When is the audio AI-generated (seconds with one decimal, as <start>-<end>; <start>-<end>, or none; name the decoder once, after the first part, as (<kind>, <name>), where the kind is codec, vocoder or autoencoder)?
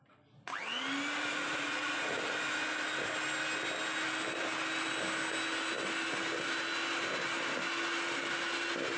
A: 1.4-2.2 (vocoder, Vocos)